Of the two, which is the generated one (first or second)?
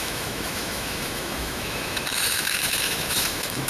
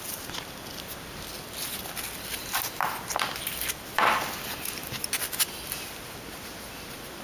first